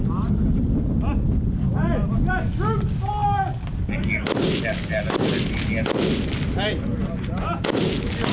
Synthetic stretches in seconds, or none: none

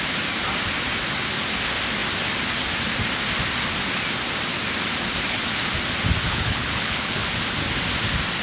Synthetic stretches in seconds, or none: 6.2-7.2 (codec, HILCodec)

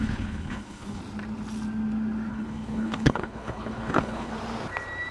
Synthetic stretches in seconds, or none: 0.0-1.0 (codec, HILCodec); 2.3-4.3

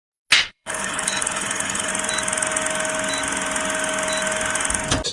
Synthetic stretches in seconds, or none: 0.5-1.9 (codec, HILCodec)

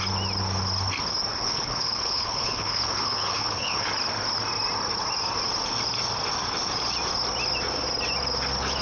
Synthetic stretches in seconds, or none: 1.3-3.9 (codec, HILCodec)

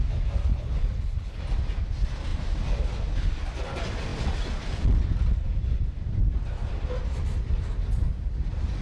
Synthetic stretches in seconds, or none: 0.5-1.4 (codec, HILCodec)